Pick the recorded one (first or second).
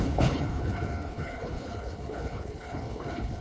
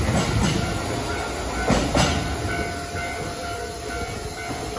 second